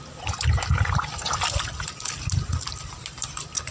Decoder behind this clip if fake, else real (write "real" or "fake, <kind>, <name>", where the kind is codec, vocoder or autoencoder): real